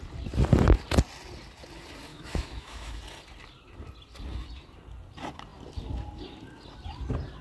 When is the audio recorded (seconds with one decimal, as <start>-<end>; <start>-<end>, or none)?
0.0-2.1; 3.0-7.4